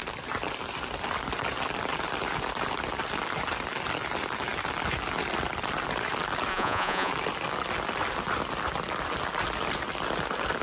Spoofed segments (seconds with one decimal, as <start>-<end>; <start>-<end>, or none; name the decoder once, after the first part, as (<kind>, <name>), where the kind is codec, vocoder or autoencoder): 6.5-7.1 (vocoder, Vocos)